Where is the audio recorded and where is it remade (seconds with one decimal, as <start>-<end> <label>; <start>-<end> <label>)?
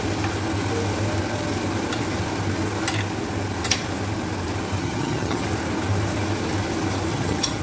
0.0-4.8 recorded; 4.8-5.4 remade; 5.4-7.1 recorded; 7.1-7.6 remade